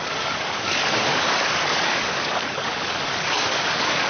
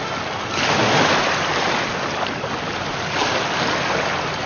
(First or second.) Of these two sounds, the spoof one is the first